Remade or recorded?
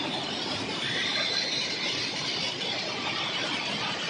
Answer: recorded